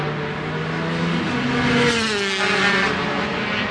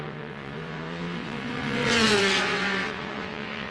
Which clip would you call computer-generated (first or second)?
second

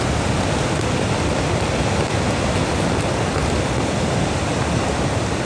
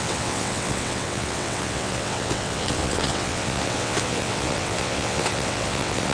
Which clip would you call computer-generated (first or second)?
second